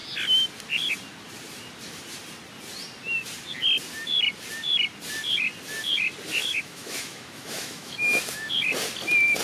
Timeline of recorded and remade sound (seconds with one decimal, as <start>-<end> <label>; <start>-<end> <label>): 0.0-6.4 recorded; 6.4-8.5 remade; 8.5-9.4 recorded